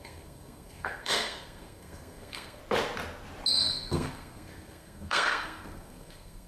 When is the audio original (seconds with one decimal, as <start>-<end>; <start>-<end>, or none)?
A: 2.6-3.6